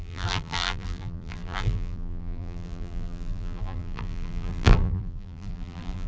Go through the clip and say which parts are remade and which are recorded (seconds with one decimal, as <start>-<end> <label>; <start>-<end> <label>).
0.0-6.1 remade